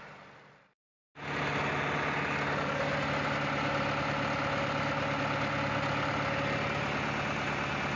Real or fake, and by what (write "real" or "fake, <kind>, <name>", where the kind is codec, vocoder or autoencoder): real